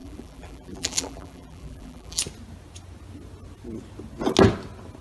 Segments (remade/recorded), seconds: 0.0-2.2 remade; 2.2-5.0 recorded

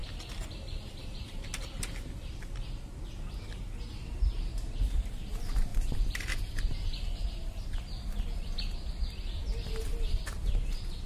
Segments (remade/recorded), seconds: 0.0-11.1 recorded